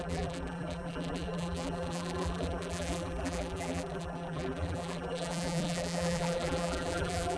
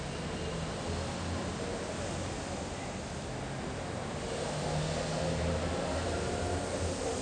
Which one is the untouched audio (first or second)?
second